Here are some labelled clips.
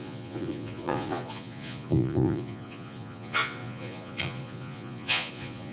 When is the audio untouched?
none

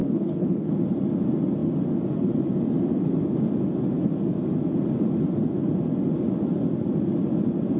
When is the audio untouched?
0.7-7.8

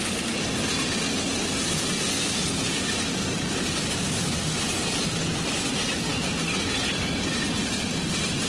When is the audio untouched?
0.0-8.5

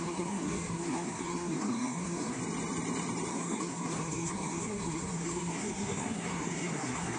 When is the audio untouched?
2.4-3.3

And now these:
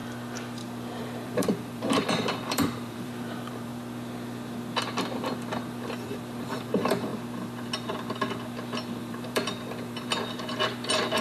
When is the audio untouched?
0.0-1.0; 3.7-5.6; 7.1-9.0

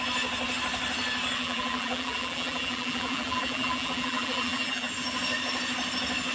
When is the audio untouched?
0.0-1.4; 4.9-6.3

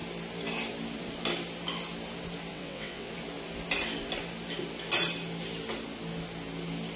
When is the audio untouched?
0.0-2.5; 3.1-7.0